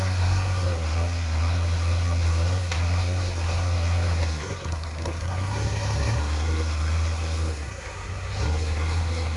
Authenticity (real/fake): fake